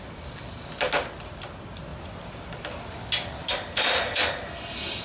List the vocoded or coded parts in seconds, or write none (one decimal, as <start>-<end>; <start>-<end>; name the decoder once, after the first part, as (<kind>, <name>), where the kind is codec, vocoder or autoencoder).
none